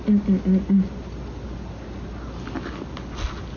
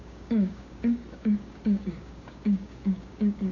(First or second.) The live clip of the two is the first